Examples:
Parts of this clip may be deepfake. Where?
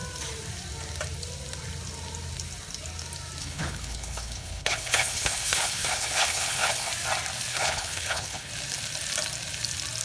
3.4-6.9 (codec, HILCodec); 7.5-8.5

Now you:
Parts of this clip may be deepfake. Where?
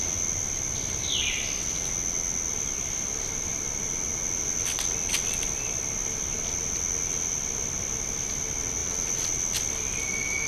none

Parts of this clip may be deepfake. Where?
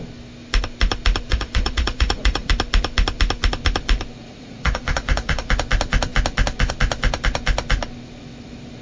1.3-2.5 (vocoder, Vocos); 4.2-5.5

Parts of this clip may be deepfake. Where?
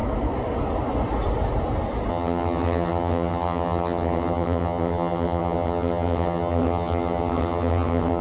2.1-8.2 (vocoder, HiFi-GAN)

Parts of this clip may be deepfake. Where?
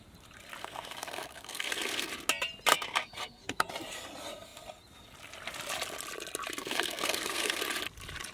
0.6-2.1 (codec, SNAC); 2.7-3.7; 6.6-7.6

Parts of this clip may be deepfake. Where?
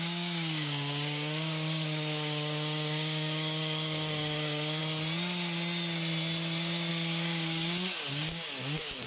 0.0-4.8 (codec, DAC); 6.9-9.1